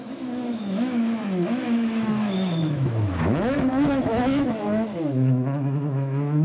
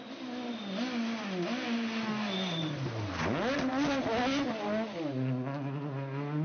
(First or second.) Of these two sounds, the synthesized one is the first